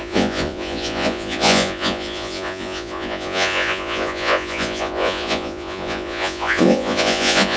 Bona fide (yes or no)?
no